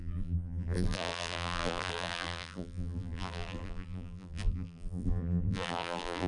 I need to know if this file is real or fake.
fake